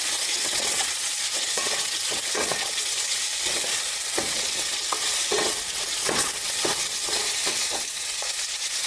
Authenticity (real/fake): fake